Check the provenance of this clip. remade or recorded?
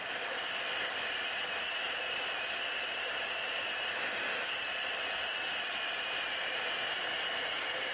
recorded